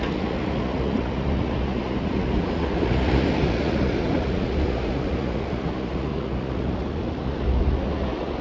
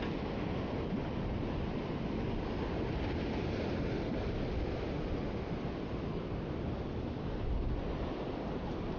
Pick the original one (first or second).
second